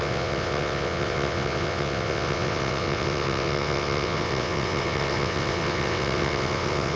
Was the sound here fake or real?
fake